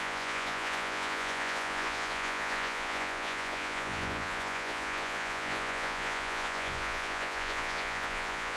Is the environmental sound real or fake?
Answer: fake